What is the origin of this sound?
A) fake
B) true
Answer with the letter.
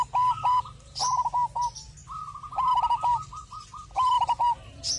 B